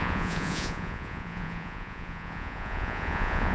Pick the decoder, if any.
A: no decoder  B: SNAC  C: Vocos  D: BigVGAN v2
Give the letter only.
C